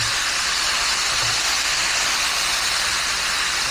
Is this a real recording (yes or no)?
yes